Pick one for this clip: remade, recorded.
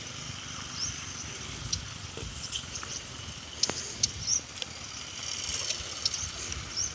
recorded